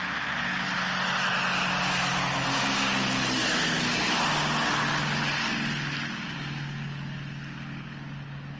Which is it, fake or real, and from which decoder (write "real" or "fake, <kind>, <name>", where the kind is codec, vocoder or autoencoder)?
real